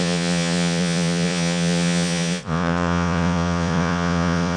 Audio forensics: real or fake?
fake